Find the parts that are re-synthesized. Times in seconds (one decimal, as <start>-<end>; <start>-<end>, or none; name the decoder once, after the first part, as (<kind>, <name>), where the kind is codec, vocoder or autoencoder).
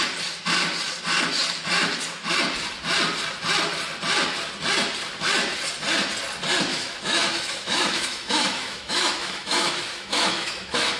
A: 6.7-11.0 (autoencoder, DAC-VAE)